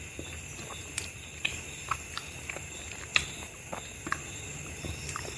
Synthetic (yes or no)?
no